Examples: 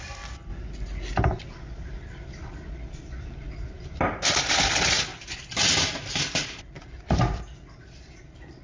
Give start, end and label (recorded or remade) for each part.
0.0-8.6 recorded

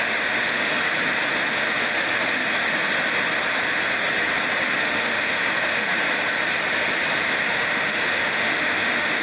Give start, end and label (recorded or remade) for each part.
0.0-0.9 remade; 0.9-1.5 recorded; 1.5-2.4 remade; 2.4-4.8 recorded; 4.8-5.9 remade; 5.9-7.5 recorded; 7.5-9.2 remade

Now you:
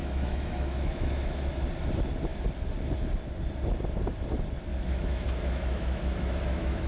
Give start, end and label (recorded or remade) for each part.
0.0-1.6 remade; 1.6-4.7 recorded; 4.7-6.9 remade

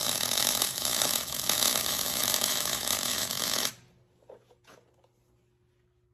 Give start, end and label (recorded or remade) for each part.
0.0-3.7 remade; 3.7-6.1 recorded